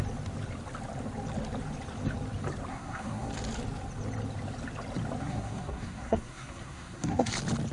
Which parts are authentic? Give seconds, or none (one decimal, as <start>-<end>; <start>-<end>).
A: 0.0-2.7; 3.3-5.2; 7.3-7.7